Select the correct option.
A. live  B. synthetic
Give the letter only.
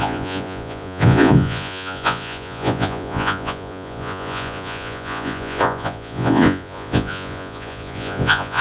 B